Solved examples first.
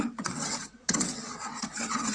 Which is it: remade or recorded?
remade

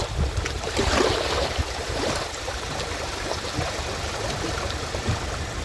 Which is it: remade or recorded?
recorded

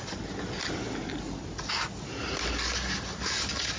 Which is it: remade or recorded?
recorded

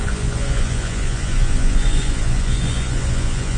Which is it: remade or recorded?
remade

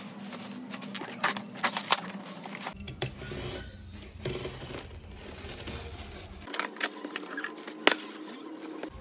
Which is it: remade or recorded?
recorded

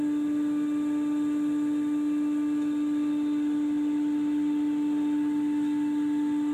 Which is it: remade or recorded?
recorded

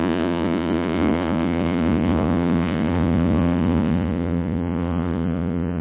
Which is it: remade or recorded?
remade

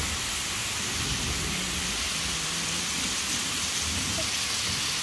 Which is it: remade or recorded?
recorded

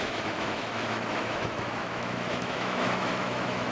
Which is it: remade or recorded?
remade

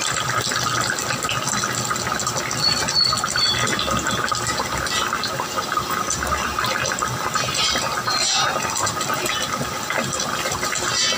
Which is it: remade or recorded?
recorded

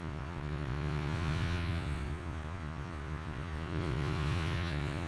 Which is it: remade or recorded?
remade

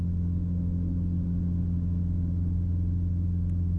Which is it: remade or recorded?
recorded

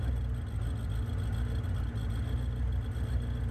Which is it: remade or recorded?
recorded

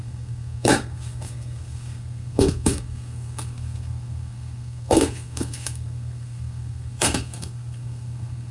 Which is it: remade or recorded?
remade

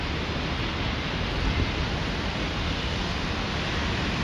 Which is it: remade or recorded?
recorded